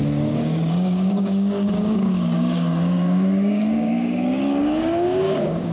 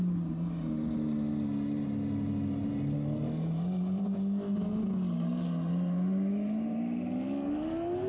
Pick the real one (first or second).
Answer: second